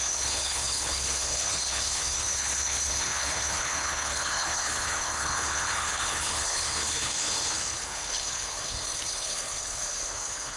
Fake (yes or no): yes